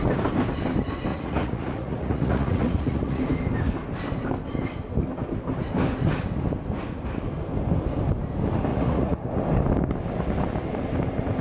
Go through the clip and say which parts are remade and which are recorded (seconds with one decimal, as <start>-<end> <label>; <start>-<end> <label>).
0.0-1.1 recorded; 1.1-3.2 remade; 3.2-8.7 recorded; 8.7-9.3 remade; 9.3-11.4 recorded